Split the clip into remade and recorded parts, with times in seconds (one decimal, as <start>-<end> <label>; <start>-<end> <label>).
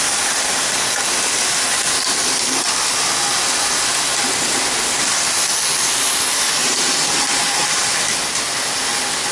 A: 0.0-6.6 recorded; 6.6-7.9 remade; 7.9-9.3 recorded